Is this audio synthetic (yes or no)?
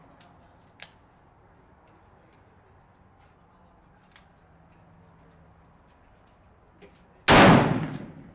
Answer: no